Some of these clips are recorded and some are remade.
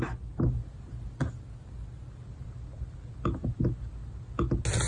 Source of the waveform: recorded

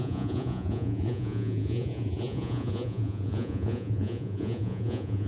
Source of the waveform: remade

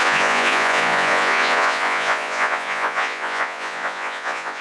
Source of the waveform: remade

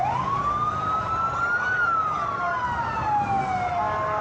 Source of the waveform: recorded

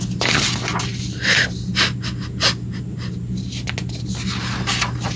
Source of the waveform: recorded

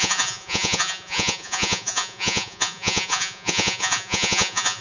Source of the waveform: remade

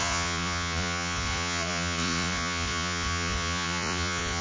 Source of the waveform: remade